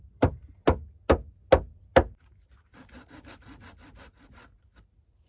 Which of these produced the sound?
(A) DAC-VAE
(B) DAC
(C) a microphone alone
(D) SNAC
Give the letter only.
C